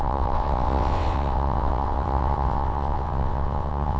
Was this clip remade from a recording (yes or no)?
yes